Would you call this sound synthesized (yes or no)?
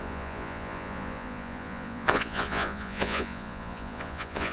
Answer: yes